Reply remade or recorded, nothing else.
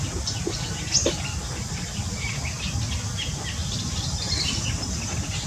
recorded